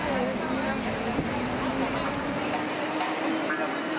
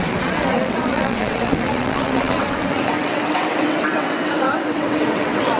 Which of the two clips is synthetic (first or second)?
second